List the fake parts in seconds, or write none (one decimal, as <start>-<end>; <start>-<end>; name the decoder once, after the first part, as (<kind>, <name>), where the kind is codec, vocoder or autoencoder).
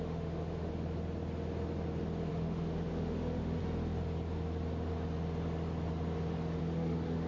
0.0-0.7 (autoencoder, DAC-VAE); 2.3-3.6; 6.6-7.3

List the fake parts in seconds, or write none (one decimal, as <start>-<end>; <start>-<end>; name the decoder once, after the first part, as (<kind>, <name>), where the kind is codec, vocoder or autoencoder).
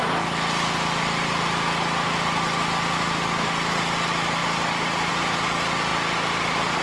none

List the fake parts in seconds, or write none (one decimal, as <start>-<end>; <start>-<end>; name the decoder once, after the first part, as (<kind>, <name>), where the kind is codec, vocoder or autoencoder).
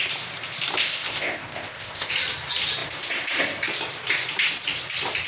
0.8-2.1 (codec, ZipCodec)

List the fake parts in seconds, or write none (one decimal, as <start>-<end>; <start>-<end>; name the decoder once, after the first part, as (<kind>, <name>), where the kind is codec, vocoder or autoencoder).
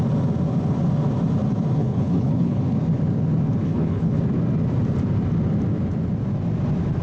1.8-2.6 (codec, HILCodec); 3.6-4.2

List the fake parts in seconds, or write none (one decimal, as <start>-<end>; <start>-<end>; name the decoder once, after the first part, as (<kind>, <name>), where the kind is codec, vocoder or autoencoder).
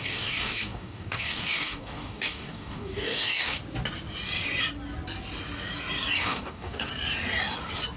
0.0-3.6 (codec, DAC); 6.2-6.9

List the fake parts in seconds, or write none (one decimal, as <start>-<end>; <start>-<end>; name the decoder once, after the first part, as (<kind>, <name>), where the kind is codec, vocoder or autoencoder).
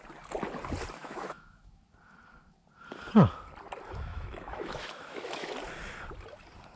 1.0-1.8 (autoencoder, DAC-VAE); 4.1-5.5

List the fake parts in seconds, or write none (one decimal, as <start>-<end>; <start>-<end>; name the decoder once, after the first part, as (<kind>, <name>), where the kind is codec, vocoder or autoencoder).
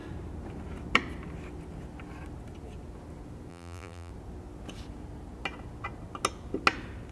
3.5-4.1 (vocoder, BigVGAN v2)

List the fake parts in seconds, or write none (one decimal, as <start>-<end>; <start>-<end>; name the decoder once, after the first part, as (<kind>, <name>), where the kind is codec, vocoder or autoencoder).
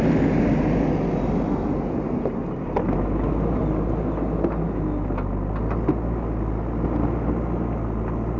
none